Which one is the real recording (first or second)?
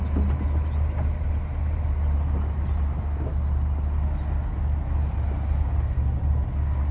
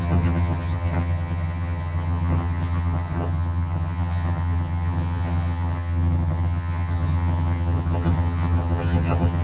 first